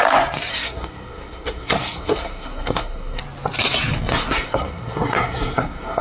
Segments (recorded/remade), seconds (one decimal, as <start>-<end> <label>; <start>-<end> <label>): 0.0-0.5 recorded; 0.5-3.2 remade; 3.2-4.1 recorded; 4.1-6.0 remade